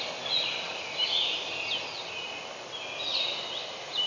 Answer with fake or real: real